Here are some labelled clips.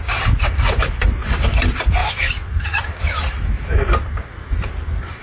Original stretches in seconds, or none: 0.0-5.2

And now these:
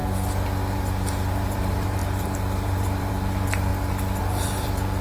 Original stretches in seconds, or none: 0.0-0.7; 3.7-4.2

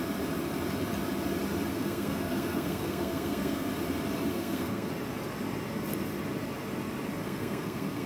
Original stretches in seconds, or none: 0.0-1.7; 3.7-4.3; 4.9-7.2

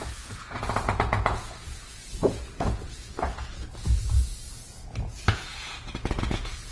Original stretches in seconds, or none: none

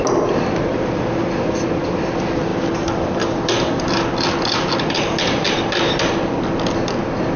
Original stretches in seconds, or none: 0.0-7.4